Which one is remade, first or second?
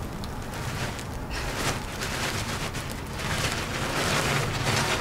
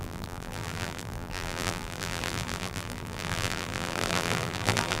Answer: second